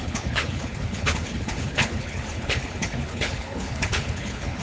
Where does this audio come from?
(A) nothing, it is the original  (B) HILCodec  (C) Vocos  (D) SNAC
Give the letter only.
B